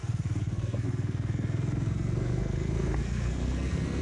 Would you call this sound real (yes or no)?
no